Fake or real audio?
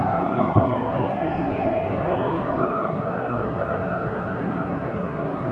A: fake